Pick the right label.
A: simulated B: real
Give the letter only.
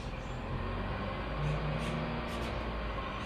B